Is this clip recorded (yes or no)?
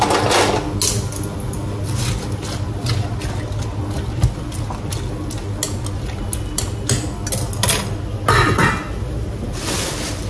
yes